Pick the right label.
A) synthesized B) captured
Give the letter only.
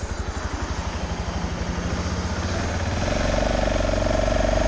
B